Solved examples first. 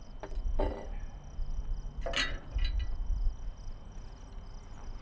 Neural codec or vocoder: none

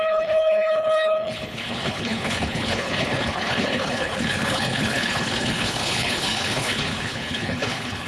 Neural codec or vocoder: codec, HILCodec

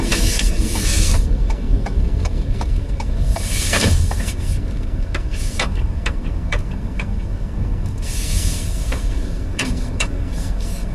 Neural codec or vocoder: codec, SNAC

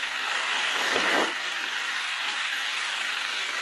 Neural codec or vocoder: codec, DAC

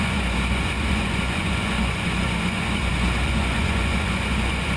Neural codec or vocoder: vocoder, Vocos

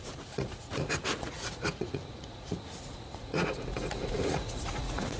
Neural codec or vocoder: vocoder, Vocos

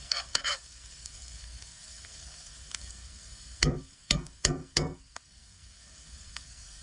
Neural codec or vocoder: codec, SNAC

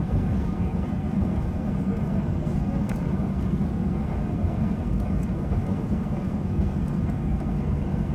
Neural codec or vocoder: codec, SNAC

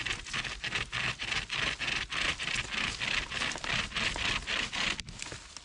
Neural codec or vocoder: none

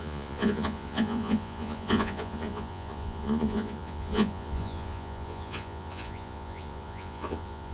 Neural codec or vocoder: vocoder, Vocos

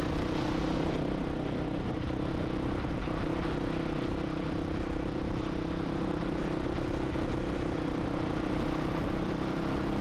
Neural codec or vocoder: none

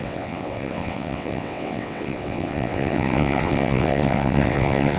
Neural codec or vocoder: vocoder, WaveNeXt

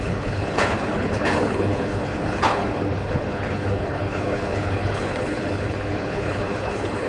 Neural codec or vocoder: codec, HILCodec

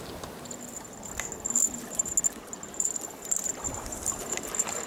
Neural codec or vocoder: none